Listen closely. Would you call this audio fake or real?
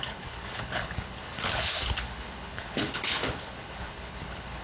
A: fake